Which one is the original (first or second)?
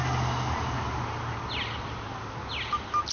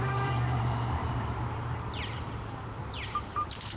first